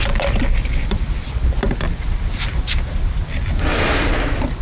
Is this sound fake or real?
real